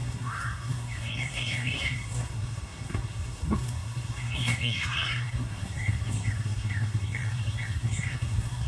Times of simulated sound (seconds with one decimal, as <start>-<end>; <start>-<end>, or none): 0.0-8.7